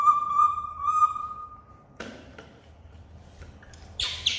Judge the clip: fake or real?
fake